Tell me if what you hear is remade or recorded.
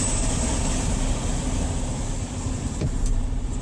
recorded